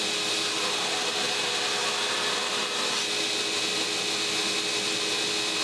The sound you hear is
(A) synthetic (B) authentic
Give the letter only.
B